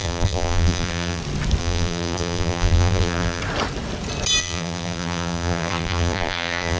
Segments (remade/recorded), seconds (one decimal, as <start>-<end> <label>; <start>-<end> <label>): 0.0-1.2 remade; 1.2-1.6 recorded; 1.6-3.4 remade; 3.4-4.4 recorded; 4.4-6.8 remade